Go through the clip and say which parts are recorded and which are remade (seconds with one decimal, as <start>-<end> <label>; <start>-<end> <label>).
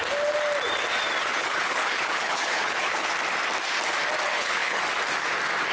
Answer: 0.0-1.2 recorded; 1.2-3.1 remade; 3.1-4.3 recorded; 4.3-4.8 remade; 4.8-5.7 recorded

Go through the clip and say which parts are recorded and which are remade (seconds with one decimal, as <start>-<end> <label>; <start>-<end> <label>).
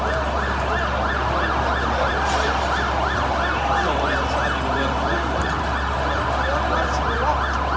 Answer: 0.0-7.8 recorded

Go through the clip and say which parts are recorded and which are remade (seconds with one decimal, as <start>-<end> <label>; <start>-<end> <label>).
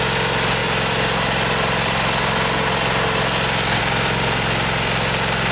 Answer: 0.0-5.5 recorded